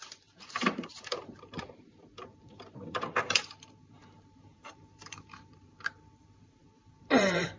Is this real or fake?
fake